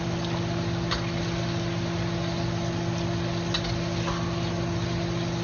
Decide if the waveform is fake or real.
real